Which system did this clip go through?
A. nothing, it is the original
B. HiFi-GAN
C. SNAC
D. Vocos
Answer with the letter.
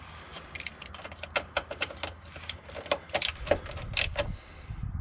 A